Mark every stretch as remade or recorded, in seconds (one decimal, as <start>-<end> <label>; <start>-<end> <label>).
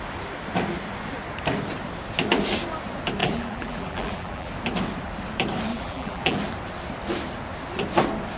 0.0-3.2 recorded; 3.2-4.5 remade; 4.5-5.7 recorded; 5.7-6.4 remade; 6.4-8.4 recorded